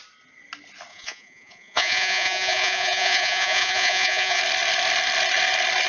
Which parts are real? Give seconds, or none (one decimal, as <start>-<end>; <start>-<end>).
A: 0.0-0.9; 4.4-5.9